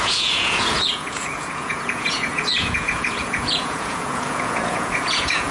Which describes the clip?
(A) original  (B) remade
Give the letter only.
B